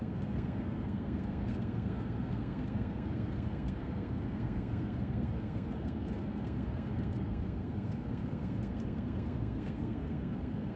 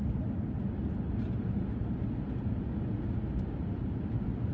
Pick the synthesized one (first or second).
first